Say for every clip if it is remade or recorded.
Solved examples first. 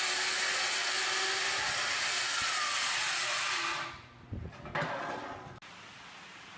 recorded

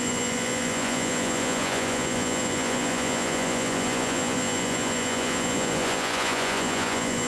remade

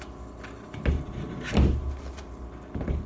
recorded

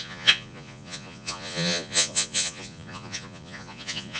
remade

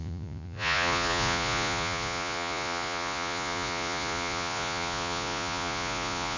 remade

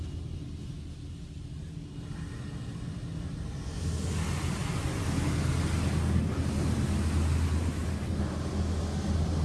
recorded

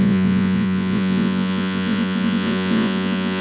remade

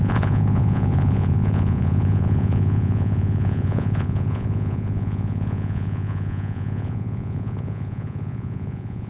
remade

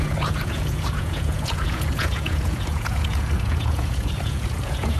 remade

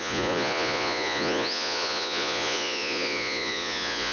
remade